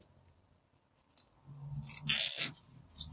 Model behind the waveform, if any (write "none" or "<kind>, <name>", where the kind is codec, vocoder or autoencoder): none